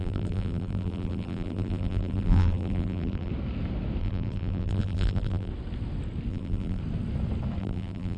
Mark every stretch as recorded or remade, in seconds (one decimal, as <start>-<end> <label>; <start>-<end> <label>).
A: 0.0-3.3 remade; 3.3-4.0 recorded; 4.0-5.5 remade; 5.5-6.3 recorded; 6.3-6.8 remade; 6.8-7.6 recorded; 7.6-8.2 remade